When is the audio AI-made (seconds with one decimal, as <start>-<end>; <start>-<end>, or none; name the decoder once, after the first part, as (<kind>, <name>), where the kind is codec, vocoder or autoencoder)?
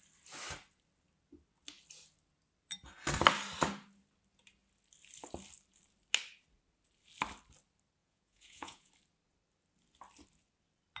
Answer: 8.0-8.9 (vocoder, Vocos)